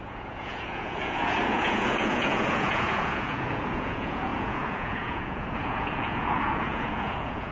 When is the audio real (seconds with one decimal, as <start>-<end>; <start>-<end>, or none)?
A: none